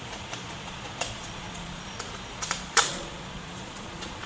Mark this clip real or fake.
fake